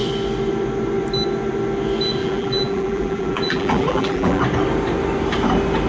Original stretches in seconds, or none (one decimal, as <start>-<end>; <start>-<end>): 0.0-2.2; 4.4-5.9